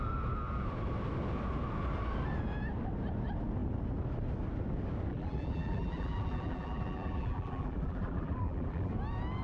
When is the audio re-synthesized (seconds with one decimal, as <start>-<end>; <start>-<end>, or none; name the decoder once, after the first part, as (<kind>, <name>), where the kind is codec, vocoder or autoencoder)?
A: 5.1-8.9 (vocoder, BigVGAN v2)